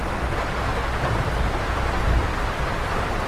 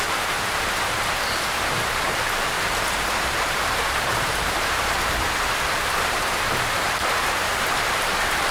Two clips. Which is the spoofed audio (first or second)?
second